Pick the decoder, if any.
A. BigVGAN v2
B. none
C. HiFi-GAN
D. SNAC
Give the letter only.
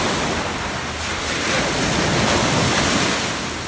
B